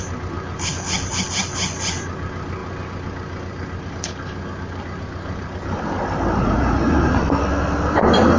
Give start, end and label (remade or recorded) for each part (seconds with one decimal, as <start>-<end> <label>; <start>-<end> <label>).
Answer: 0.0-6.4 recorded; 6.4-7.2 remade; 7.2-8.4 recorded